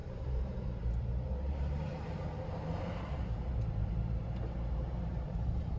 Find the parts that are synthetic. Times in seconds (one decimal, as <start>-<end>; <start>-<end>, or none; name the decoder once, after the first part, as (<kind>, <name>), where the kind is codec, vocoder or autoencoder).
0.0-5.8 (vocoder, BigVGAN v2)